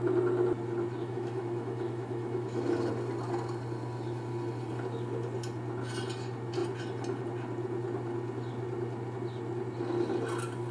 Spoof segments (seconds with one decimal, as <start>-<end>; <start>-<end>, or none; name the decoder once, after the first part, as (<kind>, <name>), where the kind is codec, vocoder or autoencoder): 1.0-2.9 (autoencoder, DAC-VAE)